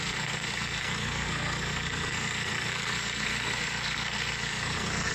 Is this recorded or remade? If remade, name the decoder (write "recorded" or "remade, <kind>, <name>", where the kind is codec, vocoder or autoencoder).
remade, codec, SNAC